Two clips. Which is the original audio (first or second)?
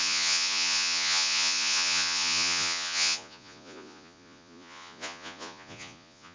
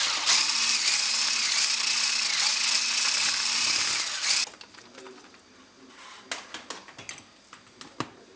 second